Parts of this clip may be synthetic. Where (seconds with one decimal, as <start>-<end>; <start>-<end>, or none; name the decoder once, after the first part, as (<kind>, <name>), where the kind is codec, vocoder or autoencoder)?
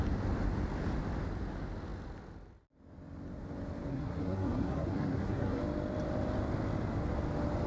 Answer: 3.9-5.6 (codec, SNAC)